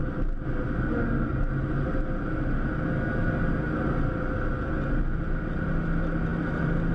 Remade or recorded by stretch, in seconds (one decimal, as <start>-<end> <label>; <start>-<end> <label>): 0.0-6.9 recorded